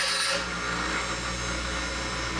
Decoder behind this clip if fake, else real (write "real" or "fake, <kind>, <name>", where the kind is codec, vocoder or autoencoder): real